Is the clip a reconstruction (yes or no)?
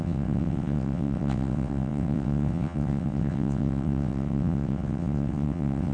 yes